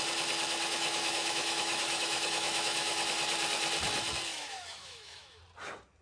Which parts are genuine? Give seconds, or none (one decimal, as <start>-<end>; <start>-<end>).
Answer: 0.0-0.6; 3.0-4.3; 5.4-6.0

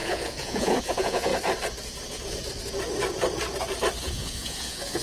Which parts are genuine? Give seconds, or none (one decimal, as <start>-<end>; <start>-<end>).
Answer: 1.3-4.0

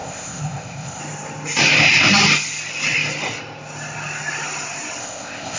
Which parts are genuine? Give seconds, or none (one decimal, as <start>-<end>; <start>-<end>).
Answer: 1.0-5.0

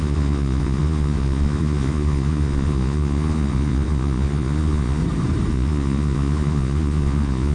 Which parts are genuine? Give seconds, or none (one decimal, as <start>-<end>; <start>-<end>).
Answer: 5.0-5.5

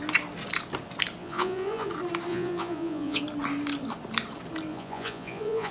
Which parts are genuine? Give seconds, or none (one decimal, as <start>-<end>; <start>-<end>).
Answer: 0.0-1.2; 1.9-2.3; 3.2-4.7